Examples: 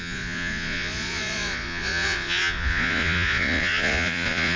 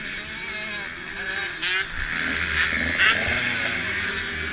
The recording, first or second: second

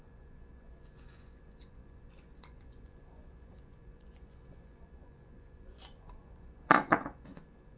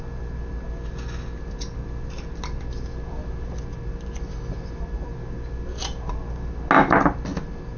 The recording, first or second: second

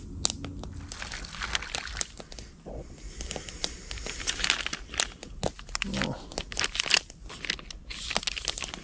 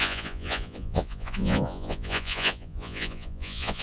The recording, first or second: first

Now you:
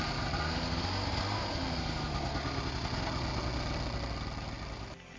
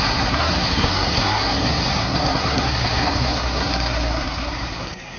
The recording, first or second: first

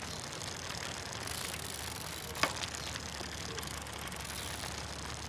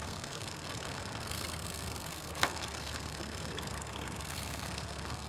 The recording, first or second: first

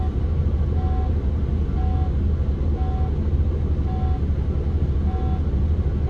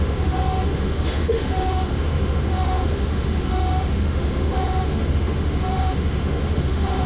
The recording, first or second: first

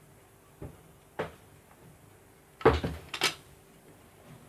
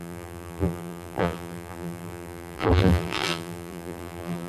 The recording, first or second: first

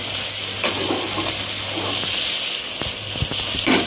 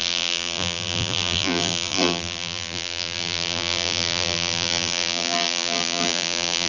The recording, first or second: first